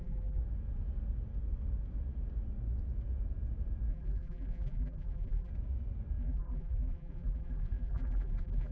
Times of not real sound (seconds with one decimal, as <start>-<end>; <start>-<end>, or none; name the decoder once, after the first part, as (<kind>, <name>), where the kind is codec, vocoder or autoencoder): 0.0-0.4 (vocoder, BigVGAN v2); 3.9-5.5; 6.2-8.7